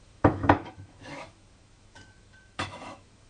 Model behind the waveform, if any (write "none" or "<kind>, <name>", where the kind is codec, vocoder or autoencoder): autoencoder, DAC-VAE